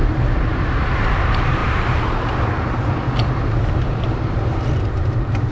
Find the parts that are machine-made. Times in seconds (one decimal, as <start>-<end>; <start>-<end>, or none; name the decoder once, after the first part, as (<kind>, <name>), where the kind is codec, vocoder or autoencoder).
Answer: 0.0-5.5 (vocoder, BigVGAN v2)

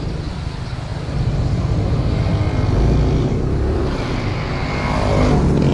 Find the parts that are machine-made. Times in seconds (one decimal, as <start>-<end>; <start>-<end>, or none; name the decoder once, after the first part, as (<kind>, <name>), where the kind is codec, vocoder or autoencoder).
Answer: 2.3-3.8 (vocoder, BigVGAN v2)

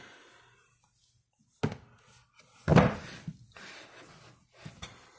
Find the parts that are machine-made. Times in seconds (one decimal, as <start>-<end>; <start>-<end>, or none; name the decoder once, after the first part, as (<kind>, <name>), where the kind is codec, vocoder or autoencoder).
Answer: none

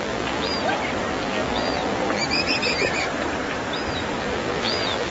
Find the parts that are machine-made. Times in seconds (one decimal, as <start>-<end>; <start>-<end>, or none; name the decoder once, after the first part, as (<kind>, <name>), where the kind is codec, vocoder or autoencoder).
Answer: 0.0-0.5 (vocoder, BigVGAN v2); 1.1-2.2; 4.2-5.1

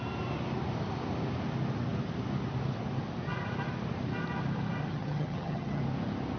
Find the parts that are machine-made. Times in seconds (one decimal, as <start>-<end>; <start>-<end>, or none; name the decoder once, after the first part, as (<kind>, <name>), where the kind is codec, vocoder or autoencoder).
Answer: 4.9-5.8 (vocoder, HiFi-GAN)

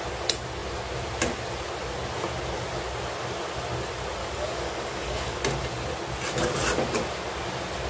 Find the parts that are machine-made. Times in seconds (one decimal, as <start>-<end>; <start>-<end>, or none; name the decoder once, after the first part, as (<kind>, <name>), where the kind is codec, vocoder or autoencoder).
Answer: 4.2-5.4 (codec, DAC)